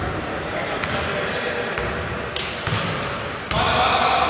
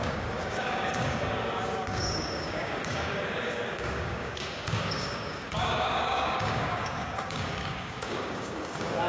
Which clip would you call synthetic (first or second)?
second